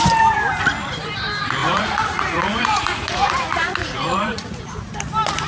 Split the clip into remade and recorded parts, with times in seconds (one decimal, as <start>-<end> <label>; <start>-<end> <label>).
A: 0.0-1.6 recorded; 1.6-4.9 remade; 4.9-5.5 recorded